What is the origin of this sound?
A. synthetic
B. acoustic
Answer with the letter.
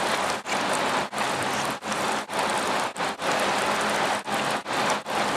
B